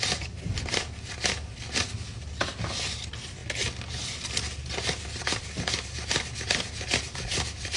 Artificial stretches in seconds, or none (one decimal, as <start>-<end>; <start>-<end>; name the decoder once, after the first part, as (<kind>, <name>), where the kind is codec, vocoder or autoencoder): none